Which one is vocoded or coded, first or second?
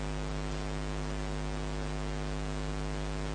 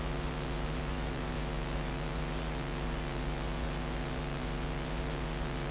second